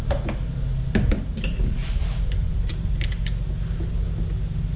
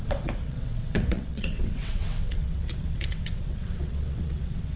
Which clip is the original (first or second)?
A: first